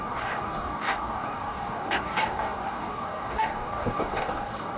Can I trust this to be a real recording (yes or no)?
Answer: no